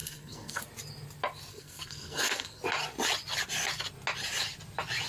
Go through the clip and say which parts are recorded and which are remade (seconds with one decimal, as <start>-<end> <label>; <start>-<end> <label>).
0.0-0.6 remade; 0.6-1.5 recorded; 1.5-2.6 remade; 2.6-5.1 recorded